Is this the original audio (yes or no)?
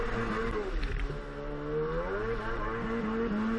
yes